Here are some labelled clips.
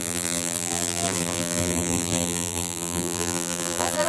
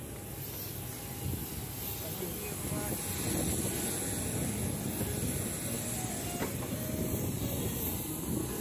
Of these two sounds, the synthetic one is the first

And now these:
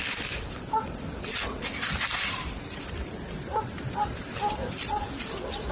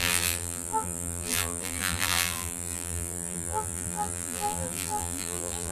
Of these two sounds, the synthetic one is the second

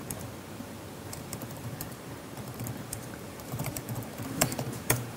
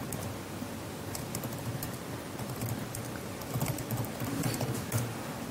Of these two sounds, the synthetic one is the first